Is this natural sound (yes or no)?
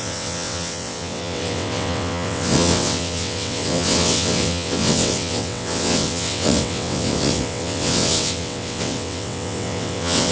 no